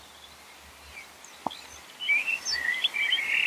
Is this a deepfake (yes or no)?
no